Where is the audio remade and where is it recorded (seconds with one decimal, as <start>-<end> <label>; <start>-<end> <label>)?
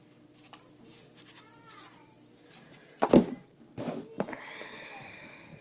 0.0-5.6 recorded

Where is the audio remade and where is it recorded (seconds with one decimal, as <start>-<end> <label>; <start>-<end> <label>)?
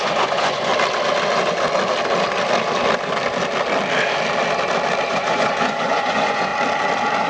0.0-0.7 remade; 0.7-5.1 recorded; 5.1-6.5 remade; 6.5-7.3 recorded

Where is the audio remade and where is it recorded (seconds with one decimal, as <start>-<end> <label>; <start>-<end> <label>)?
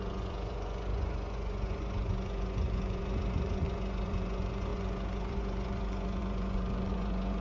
0.0-7.4 remade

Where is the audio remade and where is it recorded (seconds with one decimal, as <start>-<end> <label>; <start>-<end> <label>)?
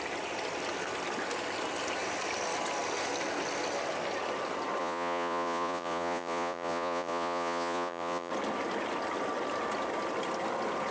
0.0-4.8 recorded; 4.8-8.3 remade; 8.3-10.9 recorded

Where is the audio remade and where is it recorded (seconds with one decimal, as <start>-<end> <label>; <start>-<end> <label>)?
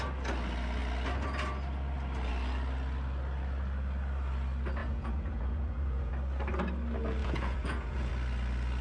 0.0-4.8 recorded; 4.8-6.1 remade; 6.1-7.2 recorded; 7.2-8.1 remade; 8.1-8.8 recorded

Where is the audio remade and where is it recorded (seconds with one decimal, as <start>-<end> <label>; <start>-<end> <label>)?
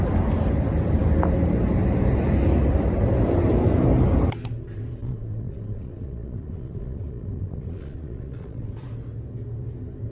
0.0-5.0 recorded; 5.0-8.7 remade; 8.7-10.1 recorded